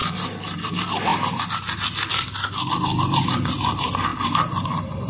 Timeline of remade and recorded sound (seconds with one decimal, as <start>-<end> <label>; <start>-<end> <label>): 0.0-0.7 remade; 0.7-4.1 recorded; 4.1-5.1 remade